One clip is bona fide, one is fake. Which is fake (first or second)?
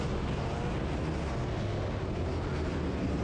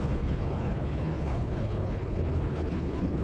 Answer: second